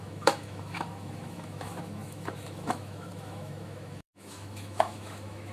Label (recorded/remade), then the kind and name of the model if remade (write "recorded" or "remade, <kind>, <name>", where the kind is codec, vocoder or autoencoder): remade, autoencoder, DAC-VAE